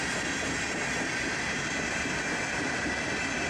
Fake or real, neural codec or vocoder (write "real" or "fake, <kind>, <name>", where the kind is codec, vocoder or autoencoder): real